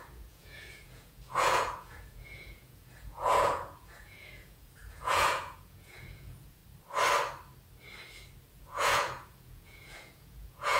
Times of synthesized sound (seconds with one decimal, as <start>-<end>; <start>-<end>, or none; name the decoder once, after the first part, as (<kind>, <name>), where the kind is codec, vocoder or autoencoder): 0.0-6.6 (vocoder, Vocos); 8.5-10.8